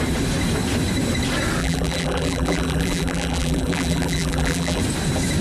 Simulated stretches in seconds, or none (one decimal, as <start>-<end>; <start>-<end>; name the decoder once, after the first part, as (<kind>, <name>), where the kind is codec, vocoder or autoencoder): 1.6-4.8 (vocoder, BigVGAN v2)